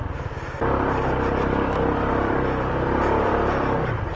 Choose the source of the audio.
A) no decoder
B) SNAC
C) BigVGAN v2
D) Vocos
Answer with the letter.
C